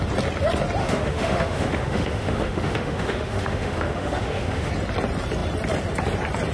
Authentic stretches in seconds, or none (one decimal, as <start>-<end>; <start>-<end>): 0.0-0.8; 4.7-6.5